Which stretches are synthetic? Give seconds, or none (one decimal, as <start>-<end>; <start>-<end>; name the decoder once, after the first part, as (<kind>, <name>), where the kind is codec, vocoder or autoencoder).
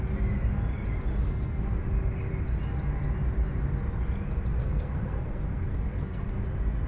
1.1-1.8 (codec, SNAC); 4.6-6.3